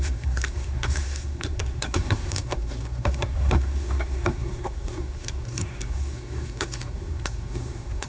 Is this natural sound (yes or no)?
no